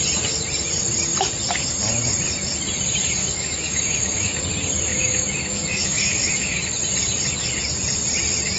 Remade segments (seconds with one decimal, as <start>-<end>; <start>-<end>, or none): 3.2-4.4; 4.9-6.6